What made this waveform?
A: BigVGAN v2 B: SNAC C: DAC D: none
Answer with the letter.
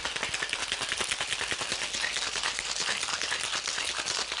D